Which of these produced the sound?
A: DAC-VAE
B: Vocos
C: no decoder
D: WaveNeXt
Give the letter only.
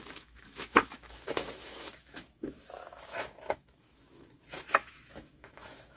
A